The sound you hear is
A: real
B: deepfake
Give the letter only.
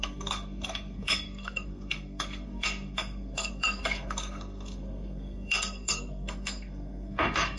B